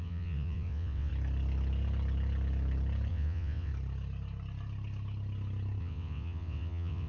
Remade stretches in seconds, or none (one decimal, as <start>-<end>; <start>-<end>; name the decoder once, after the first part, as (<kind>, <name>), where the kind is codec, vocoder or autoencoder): 0.0-1.1 (vocoder, WaveNeXt); 3.1-3.7; 5.8-7.1